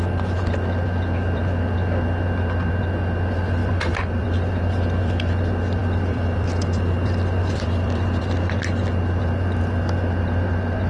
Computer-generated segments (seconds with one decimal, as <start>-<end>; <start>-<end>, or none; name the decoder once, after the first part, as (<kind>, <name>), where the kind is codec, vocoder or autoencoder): 3.6-4.5 (vocoder, BigVGAN v2); 5.8-8.2